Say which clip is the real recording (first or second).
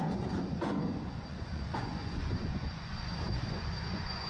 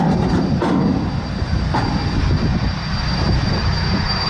second